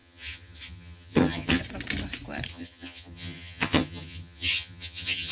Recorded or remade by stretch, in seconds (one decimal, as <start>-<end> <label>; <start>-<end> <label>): 0.0-1.6 remade; 1.6-2.5 recorded; 2.5-5.3 remade